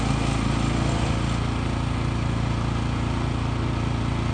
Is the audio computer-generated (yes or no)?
no